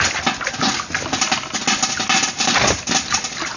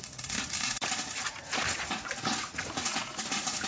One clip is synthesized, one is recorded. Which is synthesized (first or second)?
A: second